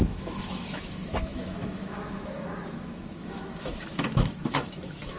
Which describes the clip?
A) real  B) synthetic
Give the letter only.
B